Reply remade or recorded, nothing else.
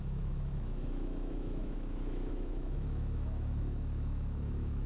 remade